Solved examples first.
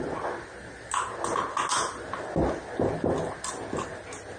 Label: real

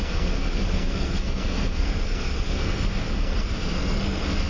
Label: fake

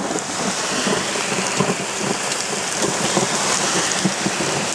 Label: real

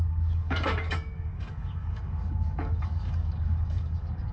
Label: fake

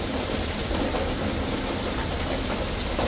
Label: real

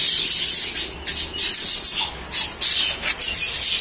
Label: real